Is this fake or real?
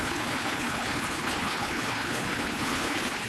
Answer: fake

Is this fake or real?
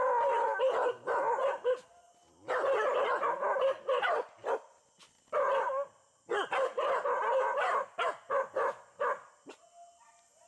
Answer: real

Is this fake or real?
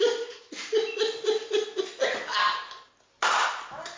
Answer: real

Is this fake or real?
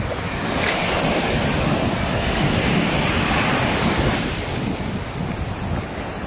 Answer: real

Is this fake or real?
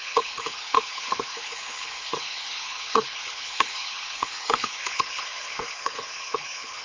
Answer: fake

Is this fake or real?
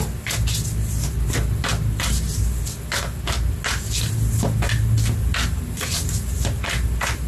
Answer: real